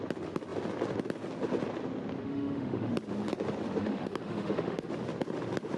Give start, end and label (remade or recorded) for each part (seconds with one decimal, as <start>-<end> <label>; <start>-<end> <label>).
0.0-2.2 recorded; 2.2-2.9 remade; 2.9-3.8 recorded; 3.8-4.9 remade; 4.9-5.8 recorded